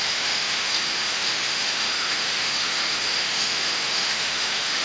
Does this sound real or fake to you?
fake